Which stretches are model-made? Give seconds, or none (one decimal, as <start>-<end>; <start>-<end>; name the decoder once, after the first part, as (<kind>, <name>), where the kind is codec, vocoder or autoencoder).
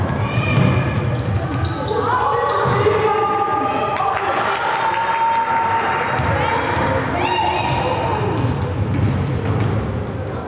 none